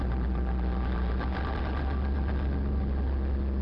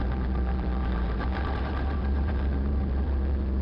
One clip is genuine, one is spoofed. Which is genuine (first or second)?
first